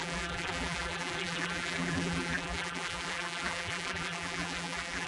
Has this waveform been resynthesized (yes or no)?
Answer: yes